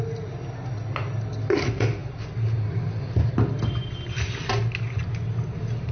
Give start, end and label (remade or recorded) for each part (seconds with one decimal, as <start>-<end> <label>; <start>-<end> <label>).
0.0-5.9 recorded